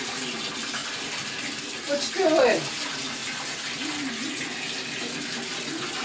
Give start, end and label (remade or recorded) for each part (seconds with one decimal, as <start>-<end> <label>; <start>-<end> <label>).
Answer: 0.0-6.0 recorded